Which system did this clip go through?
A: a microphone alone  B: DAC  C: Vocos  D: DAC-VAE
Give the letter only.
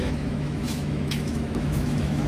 D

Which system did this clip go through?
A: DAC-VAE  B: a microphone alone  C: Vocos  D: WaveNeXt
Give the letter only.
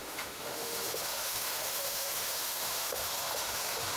A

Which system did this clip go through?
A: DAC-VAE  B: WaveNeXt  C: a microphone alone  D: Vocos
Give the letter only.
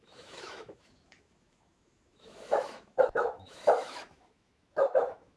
A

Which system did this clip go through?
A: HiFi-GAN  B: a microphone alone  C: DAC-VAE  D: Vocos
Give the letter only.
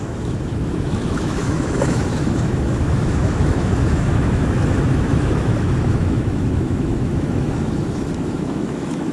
C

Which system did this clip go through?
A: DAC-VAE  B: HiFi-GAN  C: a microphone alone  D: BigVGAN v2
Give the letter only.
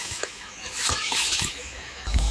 A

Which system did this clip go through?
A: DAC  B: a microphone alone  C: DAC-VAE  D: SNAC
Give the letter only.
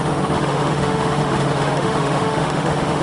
C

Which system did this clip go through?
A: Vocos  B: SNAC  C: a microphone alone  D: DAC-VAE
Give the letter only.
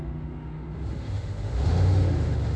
D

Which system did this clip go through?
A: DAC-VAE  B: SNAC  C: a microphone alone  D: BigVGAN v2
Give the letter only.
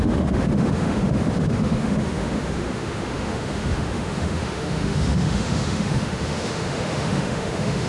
A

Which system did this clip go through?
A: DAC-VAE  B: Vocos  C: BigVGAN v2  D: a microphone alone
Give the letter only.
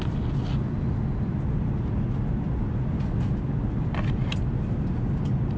D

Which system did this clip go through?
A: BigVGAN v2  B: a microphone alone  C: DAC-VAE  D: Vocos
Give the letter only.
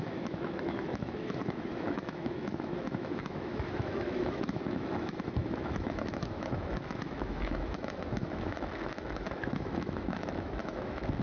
C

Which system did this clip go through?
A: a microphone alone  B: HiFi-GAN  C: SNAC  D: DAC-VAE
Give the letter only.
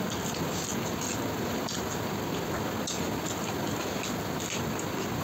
A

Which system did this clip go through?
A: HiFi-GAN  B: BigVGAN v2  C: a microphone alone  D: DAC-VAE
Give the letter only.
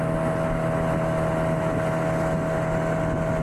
C